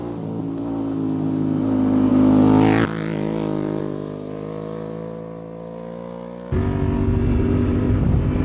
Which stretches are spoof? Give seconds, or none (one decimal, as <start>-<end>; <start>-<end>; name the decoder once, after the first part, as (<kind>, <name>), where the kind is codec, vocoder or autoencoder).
none